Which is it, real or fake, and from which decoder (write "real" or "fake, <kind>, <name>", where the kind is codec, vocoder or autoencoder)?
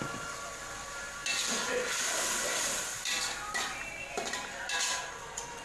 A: fake, vocoder, BigVGAN v2